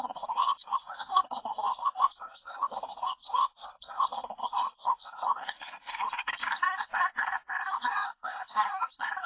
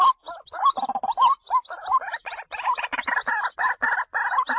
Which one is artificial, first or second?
first